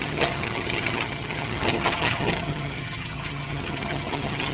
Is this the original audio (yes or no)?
no